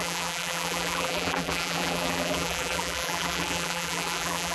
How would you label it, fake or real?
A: fake